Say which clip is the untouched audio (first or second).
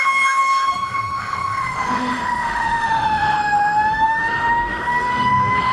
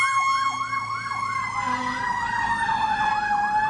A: second